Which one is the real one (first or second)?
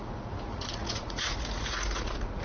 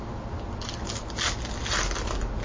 second